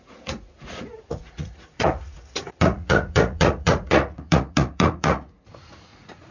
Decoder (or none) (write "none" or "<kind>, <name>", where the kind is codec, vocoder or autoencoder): vocoder, Vocos